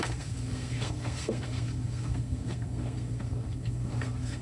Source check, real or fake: fake